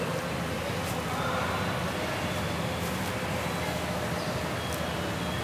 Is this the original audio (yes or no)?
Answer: yes